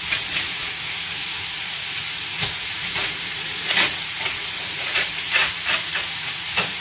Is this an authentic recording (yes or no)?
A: no